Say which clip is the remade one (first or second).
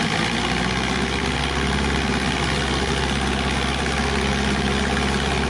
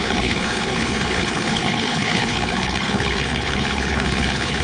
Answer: second